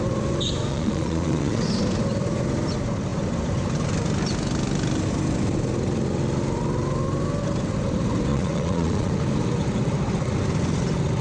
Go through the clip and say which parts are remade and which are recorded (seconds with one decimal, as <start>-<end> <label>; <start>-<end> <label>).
0.0-0.7 recorded; 0.7-1.6 remade; 1.6-8.3 recorded; 8.3-9.1 remade; 9.1-11.2 recorded